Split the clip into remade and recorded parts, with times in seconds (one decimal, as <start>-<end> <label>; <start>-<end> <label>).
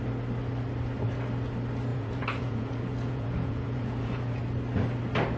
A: 0.0-1.9 recorded; 1.9-4.4 remade; 4.4-5.4 recorded